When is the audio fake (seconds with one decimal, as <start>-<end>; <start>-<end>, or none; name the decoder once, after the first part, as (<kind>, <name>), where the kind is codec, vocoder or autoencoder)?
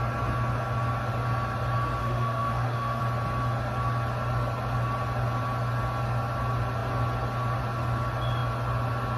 2.0-3.0 (autoencoder, DAC-VAE)